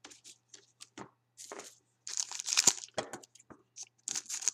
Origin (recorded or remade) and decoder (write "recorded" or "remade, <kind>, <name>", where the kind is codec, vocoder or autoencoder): recorded